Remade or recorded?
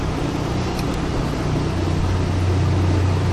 recorded